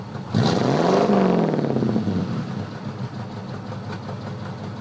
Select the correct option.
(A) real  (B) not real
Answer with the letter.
A